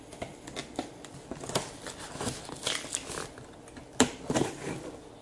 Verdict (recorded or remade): recorded